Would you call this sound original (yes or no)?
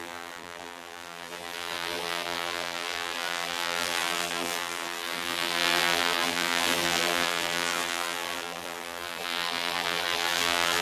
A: no